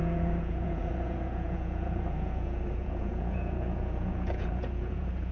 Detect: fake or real fake